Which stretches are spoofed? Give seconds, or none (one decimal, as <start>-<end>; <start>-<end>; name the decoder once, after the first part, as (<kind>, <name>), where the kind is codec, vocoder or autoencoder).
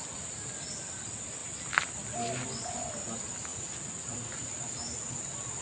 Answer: 3.5-4.5 (vocoder, Vocos)